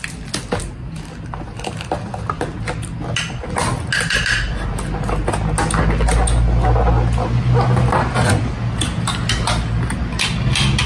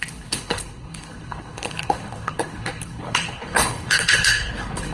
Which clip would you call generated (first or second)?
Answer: second